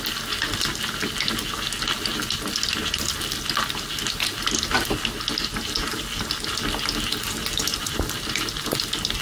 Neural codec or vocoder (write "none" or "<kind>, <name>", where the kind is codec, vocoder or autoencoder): none